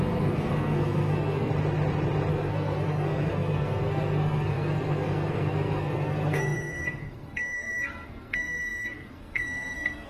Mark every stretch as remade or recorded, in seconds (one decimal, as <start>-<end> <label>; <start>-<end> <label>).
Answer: 0.0-1.5 remade; 1.5-2.3 recorded; 2.3-10.1 remade